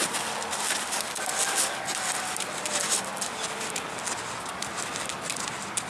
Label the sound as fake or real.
real